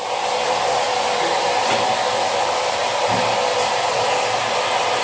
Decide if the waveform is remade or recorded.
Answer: recorded